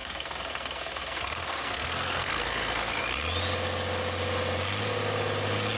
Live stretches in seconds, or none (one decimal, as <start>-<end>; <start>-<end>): 3.0-5.8